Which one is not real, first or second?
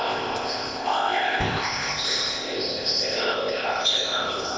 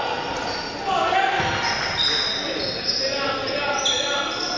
first